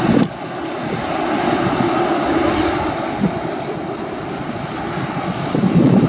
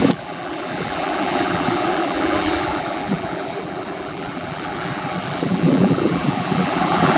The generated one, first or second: second